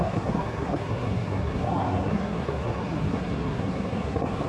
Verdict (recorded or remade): remade